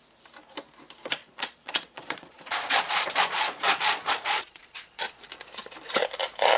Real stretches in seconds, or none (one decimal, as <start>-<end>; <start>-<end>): 0.0-1.2; 5.2-6.6